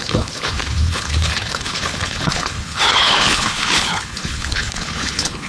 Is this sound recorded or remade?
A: remade